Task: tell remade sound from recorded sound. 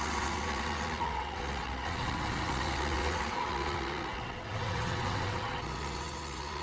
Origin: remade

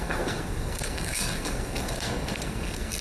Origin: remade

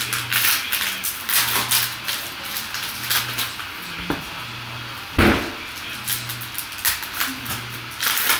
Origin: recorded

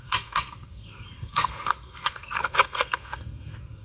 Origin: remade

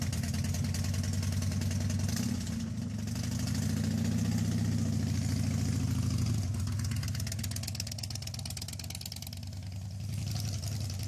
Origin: recorded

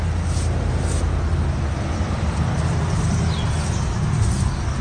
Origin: recorded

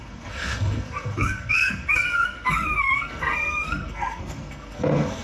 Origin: remade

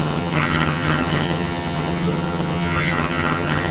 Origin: remade